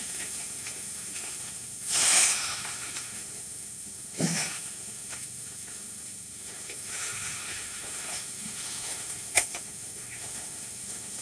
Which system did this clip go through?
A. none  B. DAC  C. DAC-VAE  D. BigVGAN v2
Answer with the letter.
C